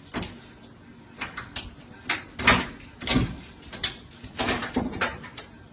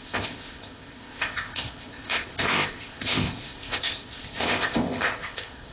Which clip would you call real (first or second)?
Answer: first